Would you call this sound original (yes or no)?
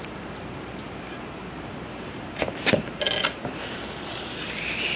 yes